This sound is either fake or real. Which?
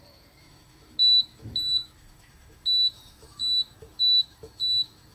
fake